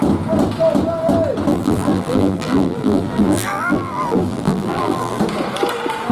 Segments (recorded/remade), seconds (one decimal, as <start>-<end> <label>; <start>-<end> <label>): 0.0-1.5 recorded; 1.5-5.2 remade; 5.2-6.1 recorded